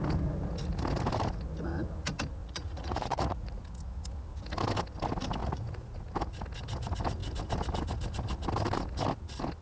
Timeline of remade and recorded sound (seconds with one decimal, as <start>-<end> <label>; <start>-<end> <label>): 0.0-2.4 recorded; 2.4-3.6 remade; 3.6-5.4 recorded; 5.4-6.1 remade; 6.1-9.6 recorded